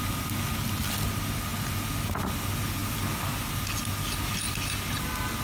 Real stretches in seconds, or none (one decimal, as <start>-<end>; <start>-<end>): 0.0-5.4